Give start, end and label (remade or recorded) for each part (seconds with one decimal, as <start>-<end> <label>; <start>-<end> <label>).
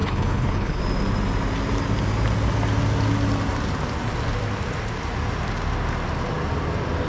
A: 0.0-0.8 remade; 0.8-7.1 recorded